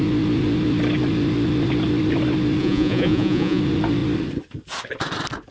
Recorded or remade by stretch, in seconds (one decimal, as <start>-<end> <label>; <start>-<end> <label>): 0.0-2.6 recorded; 2.6-3.6 remade; 3.6-5.5 recorded